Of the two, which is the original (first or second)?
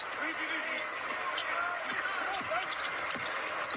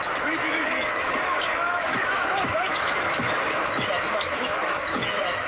first